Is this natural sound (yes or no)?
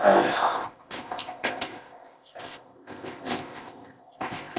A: no